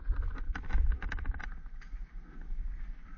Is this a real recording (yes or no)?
yes